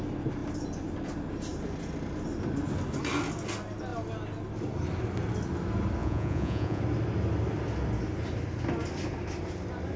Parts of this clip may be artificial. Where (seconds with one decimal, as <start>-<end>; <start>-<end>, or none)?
6.0-6.8